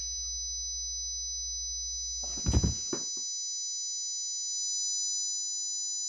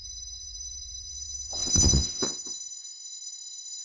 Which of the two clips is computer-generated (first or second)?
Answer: second